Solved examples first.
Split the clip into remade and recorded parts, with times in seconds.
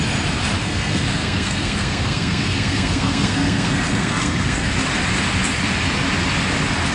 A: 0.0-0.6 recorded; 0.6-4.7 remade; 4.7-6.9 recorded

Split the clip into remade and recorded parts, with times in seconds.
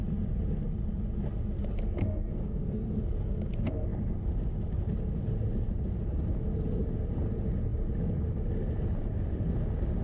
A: 0.0-2.0 recorded; 2.0-3.0 remade; 3.0-10.0 recorded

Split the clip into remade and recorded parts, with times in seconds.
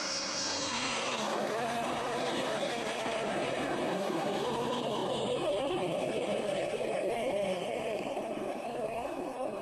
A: 0.0-9.6 remade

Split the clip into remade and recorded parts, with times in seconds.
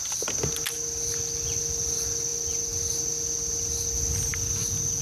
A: 0.0-5.0 recorded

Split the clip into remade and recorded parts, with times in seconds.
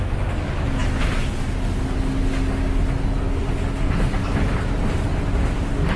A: 0.0-6.0 recorded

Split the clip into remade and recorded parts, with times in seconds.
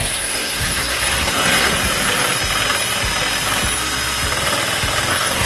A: 0.0-1.8 remade; 1.8-5.1 recorded; 5.1-5.5 remade